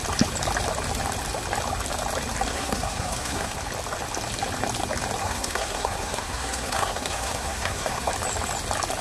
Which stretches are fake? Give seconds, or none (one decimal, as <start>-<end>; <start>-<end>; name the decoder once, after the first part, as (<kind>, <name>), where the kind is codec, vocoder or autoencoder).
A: 2.5-3.6 (codec, SNAC); 5.2-8.1